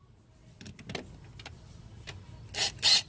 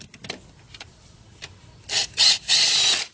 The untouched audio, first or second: first